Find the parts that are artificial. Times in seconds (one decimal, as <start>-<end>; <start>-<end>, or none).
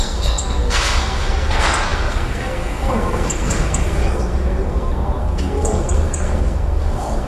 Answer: 0.0-7.3